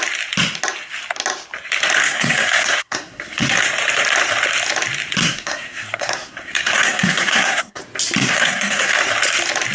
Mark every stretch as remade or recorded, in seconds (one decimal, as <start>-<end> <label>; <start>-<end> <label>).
0.0-2.0 recorded; 2.0-3.6 remade; 3.6-5.2 recorded; 5.2-7.8 remade; 7.8-8.2 recorded; 8.2-9.0 remade; 9.0-9.7 recorded